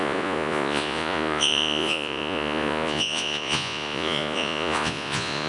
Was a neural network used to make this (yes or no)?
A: yes